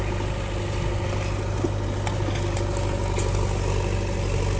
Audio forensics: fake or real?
real